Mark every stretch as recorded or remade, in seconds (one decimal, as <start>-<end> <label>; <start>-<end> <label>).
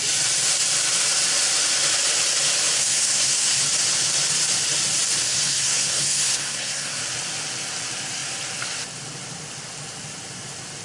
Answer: 0.0-2.8 recorded; 2.8-3.6 remade; 3.6-5.2 recorded; 5.2-7.0 remade; 7.0-10.8 recorded